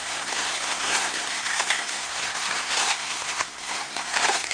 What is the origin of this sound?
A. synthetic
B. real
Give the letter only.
A